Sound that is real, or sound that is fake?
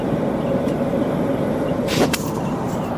fake